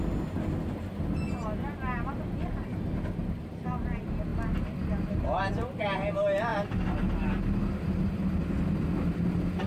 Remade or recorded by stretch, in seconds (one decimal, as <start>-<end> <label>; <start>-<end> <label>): 0.0-9.7 recorded